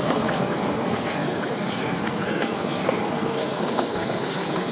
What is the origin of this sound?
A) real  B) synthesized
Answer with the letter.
B